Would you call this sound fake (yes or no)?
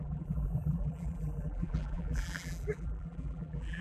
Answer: yes